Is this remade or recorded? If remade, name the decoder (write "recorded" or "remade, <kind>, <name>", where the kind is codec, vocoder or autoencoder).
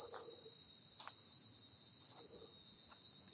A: recorded